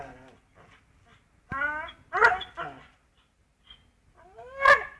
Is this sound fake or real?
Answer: real